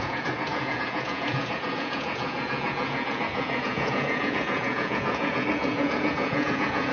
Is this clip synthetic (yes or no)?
yes